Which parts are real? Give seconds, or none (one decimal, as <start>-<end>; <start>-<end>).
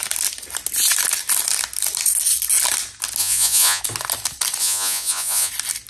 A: 0.0-3.2; 3.8-4.6; 5.5-5.9